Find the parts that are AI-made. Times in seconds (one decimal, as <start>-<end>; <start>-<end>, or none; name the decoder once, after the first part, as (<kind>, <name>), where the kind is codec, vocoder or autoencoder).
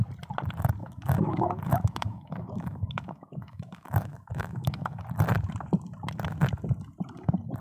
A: 0.8-5.0 (autoencoder, DAC-VAE)